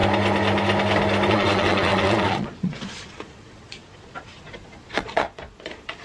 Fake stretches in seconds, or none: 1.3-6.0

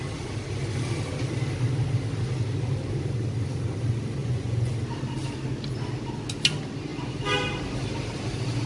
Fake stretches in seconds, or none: 4.2-4.7